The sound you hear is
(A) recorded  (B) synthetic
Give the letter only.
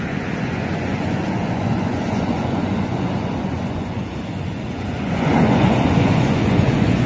B